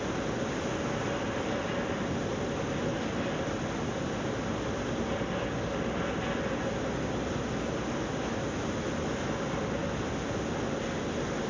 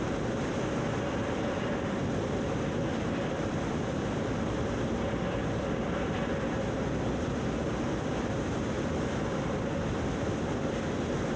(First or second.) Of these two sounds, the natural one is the first